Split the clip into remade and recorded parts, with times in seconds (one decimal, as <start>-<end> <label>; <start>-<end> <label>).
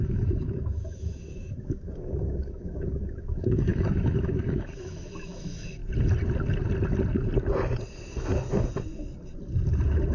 0.0-5.8 remade; 5.8-10.1 recorded